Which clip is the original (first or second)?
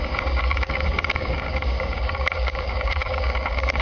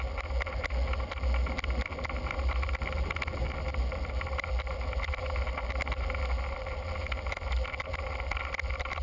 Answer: second